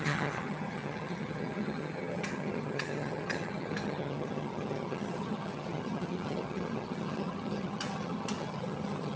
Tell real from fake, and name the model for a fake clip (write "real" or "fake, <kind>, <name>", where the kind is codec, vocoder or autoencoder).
fake, vocoder, HiFi-GAN